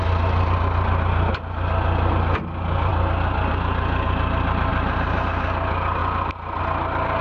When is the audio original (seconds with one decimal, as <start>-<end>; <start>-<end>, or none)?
0.0-4.7; 5.3-7.2